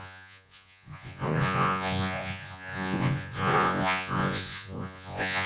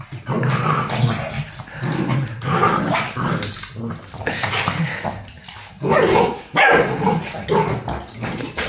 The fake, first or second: first